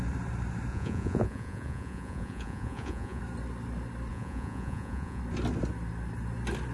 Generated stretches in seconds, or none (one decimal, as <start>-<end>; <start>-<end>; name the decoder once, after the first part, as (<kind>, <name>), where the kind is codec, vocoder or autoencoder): 0.7-3.2 (vocoder, Vocos); 4.1-5.2